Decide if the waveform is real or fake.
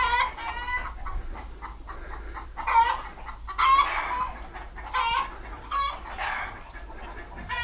real